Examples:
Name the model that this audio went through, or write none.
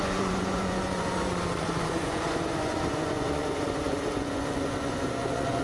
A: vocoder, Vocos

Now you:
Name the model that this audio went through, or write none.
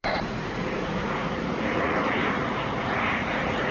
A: vocoder, Vocos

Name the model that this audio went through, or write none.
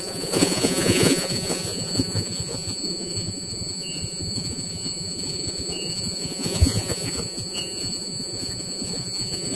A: vocoder, Vocos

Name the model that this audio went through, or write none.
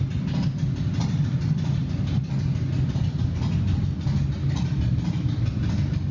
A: none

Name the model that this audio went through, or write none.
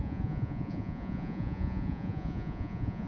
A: vocoder, Vocos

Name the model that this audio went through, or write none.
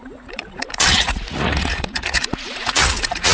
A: vocoder, Vocos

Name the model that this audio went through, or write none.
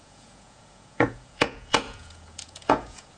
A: vocoder, Vocos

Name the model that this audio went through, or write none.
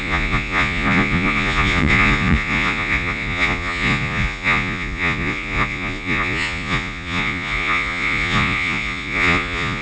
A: vocoder, Vocos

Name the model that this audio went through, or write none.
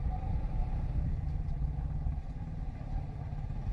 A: none